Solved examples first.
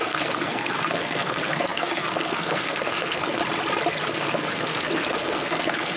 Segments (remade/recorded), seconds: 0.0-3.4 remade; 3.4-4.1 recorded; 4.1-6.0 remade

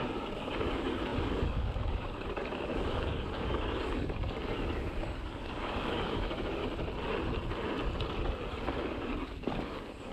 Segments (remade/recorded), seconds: 0.0-6.6 remade; 6.6-8.5 recorded; 8.5-10.1 remade

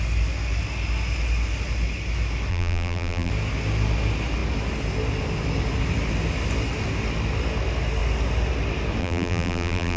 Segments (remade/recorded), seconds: 0.0-2.5 recorded; 2.5-3.3 remade; 3.3-9.0 recorded; 9.0-10.0 remade

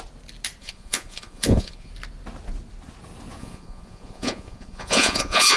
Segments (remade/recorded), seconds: 0.0-0.6 recorded; 0.6-1.9 remade; 1.9-3.4 recorded; 3.4-5.6 remade